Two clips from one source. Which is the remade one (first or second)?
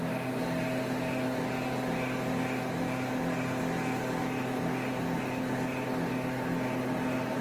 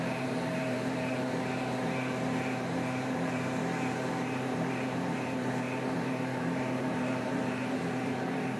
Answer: second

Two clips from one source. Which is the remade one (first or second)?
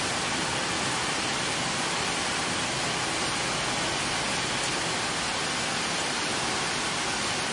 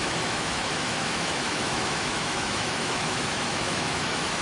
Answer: second